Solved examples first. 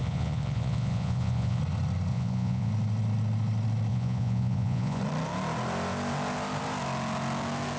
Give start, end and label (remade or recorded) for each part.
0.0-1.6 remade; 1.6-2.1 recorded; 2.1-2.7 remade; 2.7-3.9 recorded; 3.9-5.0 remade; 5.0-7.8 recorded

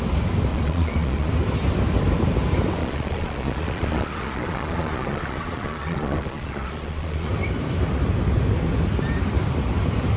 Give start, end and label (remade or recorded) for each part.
0.0-0.5 recorded; 0.5-1.3 remade; 1.3-2.8 recorded; 2.8-7.3 remade; 7.3-10.2 recorded

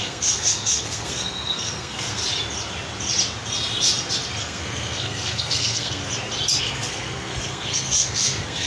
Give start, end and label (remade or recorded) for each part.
0.0-2.2 remade; 2.2-4.4 recorded; 4.4-6.0 remade; 6.0-6.6 recorded; 6.6-8.7 remade

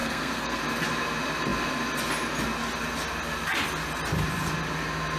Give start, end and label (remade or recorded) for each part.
0.0-0.6 remade; 0.6-5.2 recorded

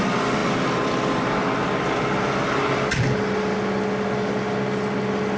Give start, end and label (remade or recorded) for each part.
0.0-5.4 recorded

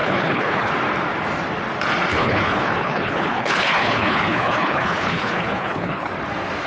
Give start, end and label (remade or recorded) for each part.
0.0-0.7 remade; 0.7-2.1 recorded; 2.1-6.1 remade; 6.1-6.7 recorded

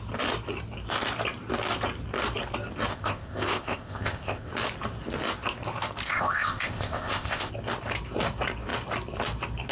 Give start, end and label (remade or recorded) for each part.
0.0-2.9 recorded; 2.9-4.5 remade; 4.5-6.1 recorded; 6.1-7.5 remade; 7.5-9.7 recorded

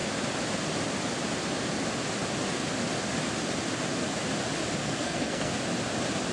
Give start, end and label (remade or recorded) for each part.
0.0-4.8 recorded; 4.8-5.5 remade; 5.5-6.3 recorded